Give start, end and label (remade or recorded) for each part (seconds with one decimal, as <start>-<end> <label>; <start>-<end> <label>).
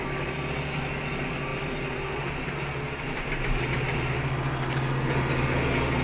0.0-6.0 recorded